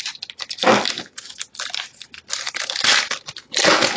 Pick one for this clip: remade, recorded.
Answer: recorded